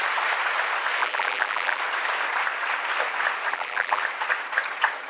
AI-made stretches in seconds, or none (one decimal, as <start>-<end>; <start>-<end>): 1.0-1.8; 3.5-4.0